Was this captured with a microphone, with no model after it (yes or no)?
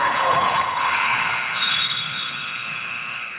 no